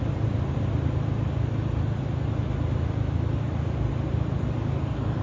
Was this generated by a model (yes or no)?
no